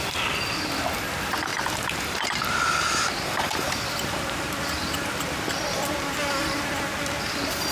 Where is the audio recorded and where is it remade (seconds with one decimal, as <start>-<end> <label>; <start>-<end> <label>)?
0.0-1.5 recorded; 1.5-6.1 remade; 6.1-7.7 recorded